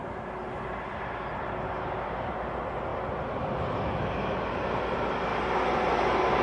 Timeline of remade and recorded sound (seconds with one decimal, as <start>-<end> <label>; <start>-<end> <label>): 0.0-6.4 recorded